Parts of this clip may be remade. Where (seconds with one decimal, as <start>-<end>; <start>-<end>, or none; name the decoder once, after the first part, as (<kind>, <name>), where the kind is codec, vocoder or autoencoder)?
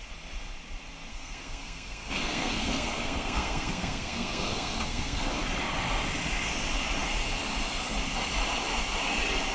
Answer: 1.1-5.3 (codec, SNAC)